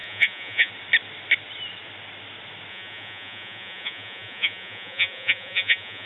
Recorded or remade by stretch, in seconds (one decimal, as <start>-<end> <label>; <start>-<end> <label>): 0.0-0.7 remade; 0.7-2.7 recorded; 2.7-6.1 remade